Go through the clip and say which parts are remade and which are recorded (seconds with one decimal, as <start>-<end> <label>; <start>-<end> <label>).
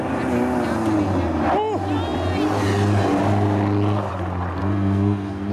0.0-4.6 recorded; 4.6-5.5 remade